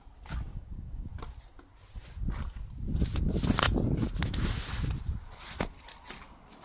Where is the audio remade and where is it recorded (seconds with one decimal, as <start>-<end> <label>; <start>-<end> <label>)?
0.0-0.5 recorded; 0.5-1.1 remade; 1.1-6.6 recorded